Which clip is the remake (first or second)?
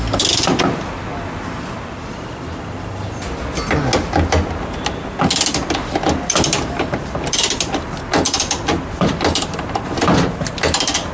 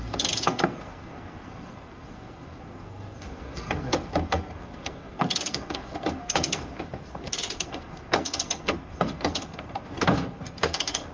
second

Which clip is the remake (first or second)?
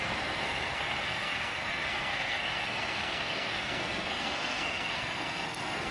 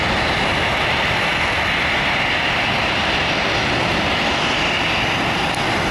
first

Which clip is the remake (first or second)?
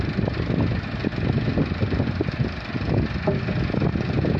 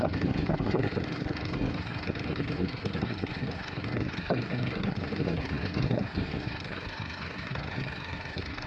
second